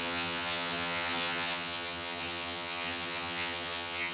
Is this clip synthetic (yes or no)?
yes